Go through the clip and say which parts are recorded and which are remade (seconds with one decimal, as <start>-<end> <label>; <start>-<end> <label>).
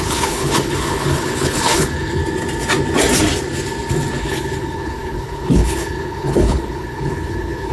0.0-2.2 remade; 2.2-4.2 recorded; 4.2-7.7 remade